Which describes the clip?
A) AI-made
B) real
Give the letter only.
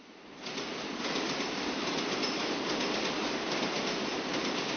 B